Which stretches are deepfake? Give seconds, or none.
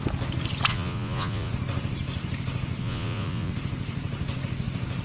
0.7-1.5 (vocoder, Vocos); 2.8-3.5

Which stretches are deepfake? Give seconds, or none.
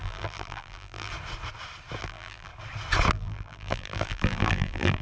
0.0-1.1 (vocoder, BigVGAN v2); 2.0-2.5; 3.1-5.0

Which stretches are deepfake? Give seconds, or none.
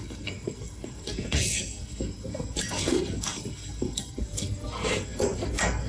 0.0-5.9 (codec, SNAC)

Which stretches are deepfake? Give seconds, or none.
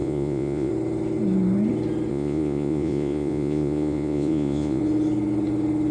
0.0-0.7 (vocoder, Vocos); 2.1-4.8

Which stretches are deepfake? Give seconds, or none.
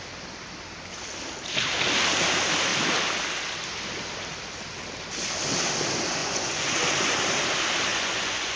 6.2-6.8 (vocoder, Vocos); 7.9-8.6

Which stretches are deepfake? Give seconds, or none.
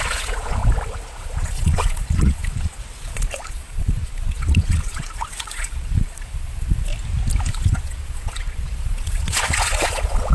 0.0-0.6 (vocoder, Vocos); 1.2-6.9; 7.5-10.3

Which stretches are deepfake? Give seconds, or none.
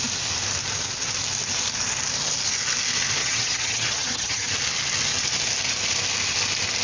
3.2-4.5 (vocoder, HiFi-GAN)